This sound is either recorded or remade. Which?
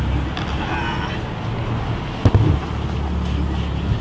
recorded